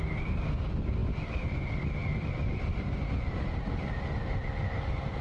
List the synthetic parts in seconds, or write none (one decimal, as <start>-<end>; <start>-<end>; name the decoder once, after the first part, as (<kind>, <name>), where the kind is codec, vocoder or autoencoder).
none